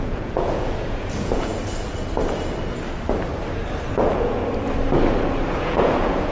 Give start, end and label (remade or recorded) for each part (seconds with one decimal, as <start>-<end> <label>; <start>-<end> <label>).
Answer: 0.0-1.5 remade; 1.5-3.9 recorded; 3.9-4.4 remade; 4.4-5.5 recorded; 5.5-6.3 remade